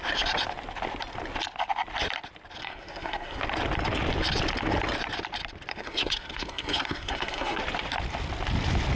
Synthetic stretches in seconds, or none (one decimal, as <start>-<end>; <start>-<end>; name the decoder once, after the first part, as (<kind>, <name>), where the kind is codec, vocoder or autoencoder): 2.6-3.4 (codec, SNAC); 5.7-7.6